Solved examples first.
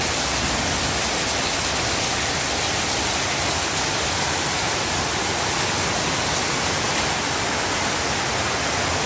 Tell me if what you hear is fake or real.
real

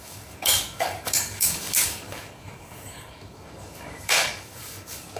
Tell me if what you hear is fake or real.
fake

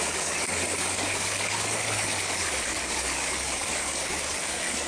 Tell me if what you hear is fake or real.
fake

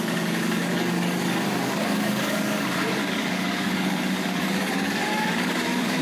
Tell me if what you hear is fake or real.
fake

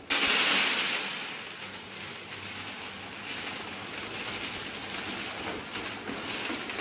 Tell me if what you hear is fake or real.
real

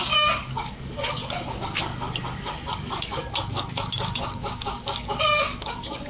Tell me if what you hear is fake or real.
fake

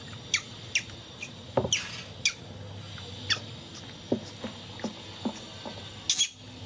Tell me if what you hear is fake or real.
real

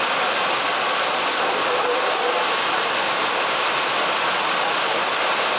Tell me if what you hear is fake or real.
real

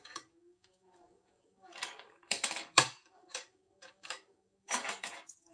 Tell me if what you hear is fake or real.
fake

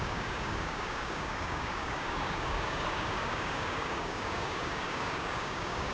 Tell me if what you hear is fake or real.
fake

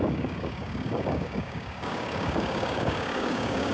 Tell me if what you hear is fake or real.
fake